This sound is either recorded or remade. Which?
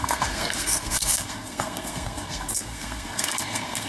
remade